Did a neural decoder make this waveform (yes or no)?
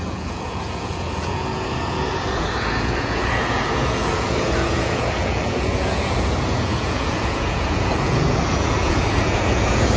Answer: yes